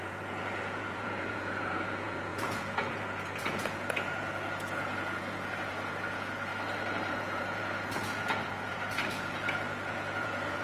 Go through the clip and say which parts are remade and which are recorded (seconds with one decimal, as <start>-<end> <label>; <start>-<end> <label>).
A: 0.0-6.5 remade; 6.5-7.1 recorded; 7.1-10.6 remade